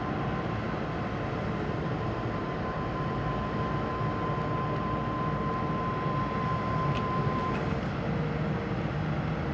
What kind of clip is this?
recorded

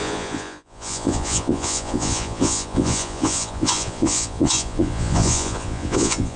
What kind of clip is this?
remade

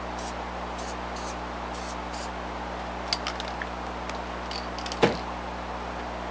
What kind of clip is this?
recorded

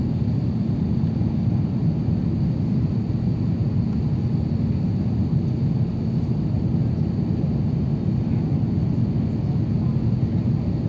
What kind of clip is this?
recorded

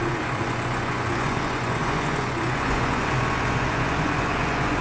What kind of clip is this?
remade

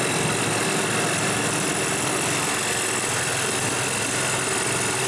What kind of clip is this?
recorded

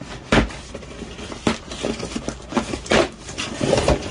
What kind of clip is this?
recorded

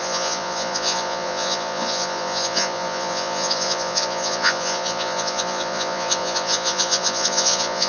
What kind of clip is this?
remade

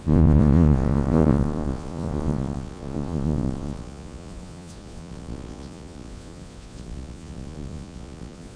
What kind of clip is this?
remade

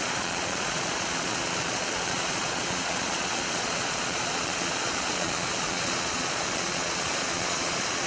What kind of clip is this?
remade